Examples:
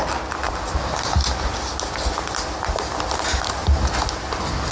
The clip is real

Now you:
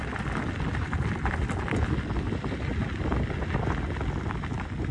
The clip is real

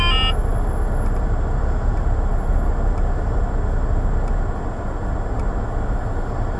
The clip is real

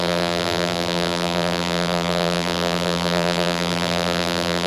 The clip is fake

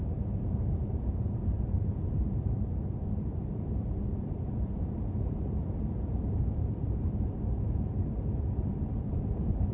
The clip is fake